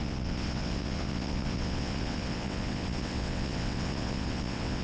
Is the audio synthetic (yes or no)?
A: yes